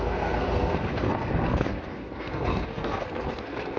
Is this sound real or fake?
fake